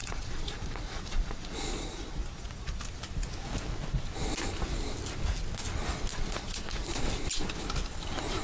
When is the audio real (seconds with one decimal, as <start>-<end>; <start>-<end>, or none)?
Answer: 2.8-6.1; 7.0-8.4

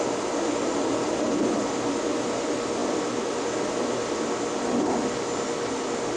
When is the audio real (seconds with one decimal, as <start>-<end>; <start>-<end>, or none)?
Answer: 0.0-6.2

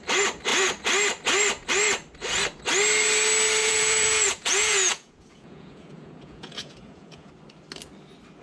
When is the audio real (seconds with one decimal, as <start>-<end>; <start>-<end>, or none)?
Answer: 0.0-3.6; 7.3-8.4

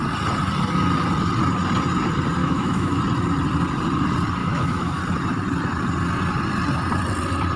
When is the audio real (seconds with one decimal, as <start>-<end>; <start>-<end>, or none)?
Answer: 0.0-2.4; 3.0-4.4; 5.0-7.6